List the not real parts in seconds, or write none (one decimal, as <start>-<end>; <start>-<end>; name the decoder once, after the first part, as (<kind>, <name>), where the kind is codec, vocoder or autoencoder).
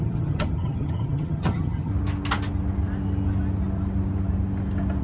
0.0-1.9 (vocoder, HiFi-GAN)